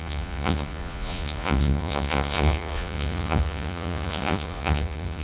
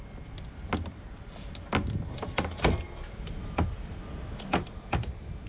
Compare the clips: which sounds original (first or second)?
second